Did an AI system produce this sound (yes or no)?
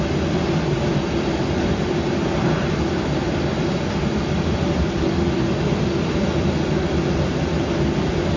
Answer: yes